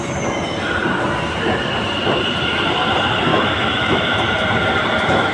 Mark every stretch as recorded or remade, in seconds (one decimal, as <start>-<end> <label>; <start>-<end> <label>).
0.0-3.3 recorded; 3.3-4.2 remade; 4.2-5.3 recorded